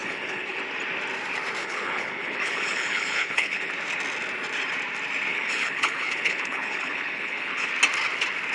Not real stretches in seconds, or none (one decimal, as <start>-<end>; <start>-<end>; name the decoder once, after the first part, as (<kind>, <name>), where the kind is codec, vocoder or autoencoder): 0.0-0.6 (codec, HILCodec); 1.6-3.7; 5.3-7.7